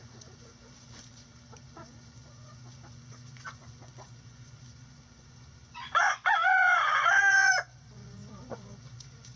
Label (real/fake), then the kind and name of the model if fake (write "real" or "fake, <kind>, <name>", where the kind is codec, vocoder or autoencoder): fake, vocoder, Vocos